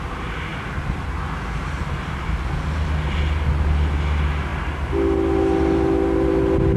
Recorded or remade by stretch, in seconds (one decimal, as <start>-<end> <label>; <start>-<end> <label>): 0.0-0.5 recorded; 0.5-1.1 remade; 1.1-6.8 recorded